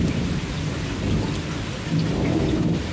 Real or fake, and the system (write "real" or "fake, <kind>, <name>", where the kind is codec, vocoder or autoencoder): real